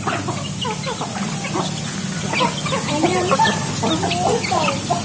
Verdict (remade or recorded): recorded